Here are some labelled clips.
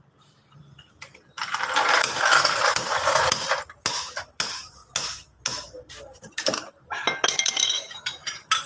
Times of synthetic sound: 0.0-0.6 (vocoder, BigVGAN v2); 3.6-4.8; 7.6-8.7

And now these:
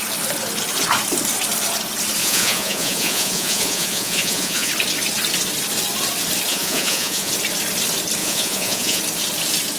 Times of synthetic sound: 2.2-4.7 (vocoder, Vocos); 6.5-7.3; 8.2-9.0

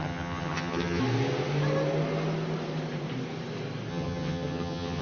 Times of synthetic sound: 0.0-1.0 (vocoder, HiFi-GAN); 3.9-5.0